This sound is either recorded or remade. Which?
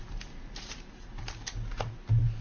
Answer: recorded